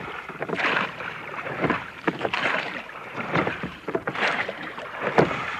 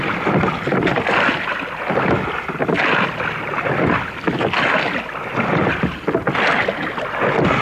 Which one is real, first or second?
second